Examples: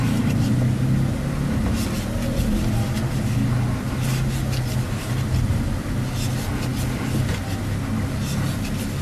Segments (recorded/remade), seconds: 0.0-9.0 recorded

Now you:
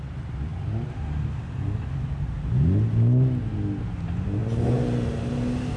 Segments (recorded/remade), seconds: 0.0-5.8 recorded

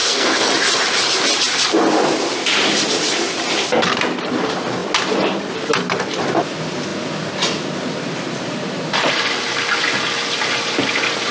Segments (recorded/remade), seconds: 0.0-0.5 remade; 0.5-11.3 recorded

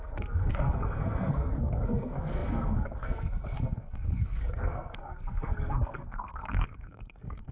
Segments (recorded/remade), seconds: 0.0-7.5 remade